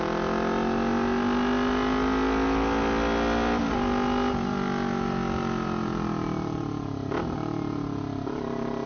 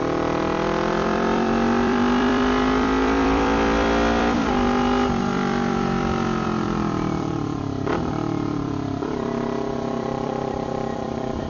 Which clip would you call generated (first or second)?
second